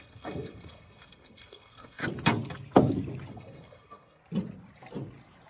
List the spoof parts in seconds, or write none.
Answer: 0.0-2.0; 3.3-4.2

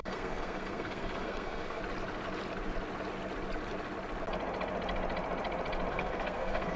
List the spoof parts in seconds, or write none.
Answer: 0.0-1.8; 5.9-6.8